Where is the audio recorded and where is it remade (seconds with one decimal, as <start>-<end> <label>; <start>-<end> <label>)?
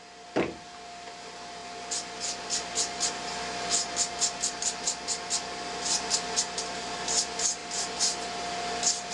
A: 0.0-9.1 recorded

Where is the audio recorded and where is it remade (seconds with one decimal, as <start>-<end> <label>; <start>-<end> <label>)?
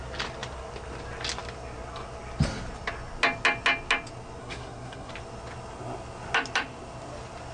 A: 0.0-4.4 recorded; 4.4-5.1 remade; 5.1-7.5 recorded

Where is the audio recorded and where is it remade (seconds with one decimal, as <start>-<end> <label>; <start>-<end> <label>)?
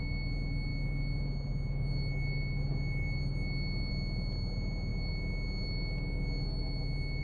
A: 0.0-7.2 recorded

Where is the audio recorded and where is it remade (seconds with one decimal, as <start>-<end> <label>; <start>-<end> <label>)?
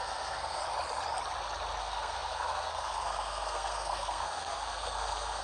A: 0.0-0.6 remade; 0.6-1.8 recorded; 1.8-5.4 remade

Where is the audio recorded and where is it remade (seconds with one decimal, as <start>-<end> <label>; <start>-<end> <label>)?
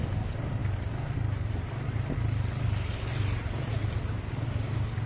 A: 0.0-5.1 recorded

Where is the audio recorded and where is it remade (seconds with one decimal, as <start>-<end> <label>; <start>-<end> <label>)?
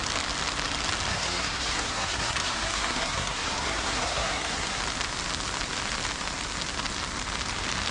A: 0.0-1.1 recorded; 1.1-4.8 remade; 4.8-7.9 recorded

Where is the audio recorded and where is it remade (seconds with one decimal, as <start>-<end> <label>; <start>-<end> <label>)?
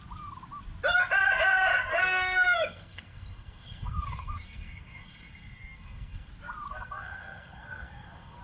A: 0.0-1.9 recorded; 1.9-6.3 remade; 6.3-6.7 recorded; 6.7-8.4 remade